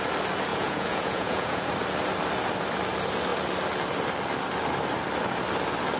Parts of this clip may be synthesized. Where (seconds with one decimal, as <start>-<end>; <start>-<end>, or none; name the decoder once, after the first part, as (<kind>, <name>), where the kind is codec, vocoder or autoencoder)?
0.5-1.7 (vocoder, Vocos)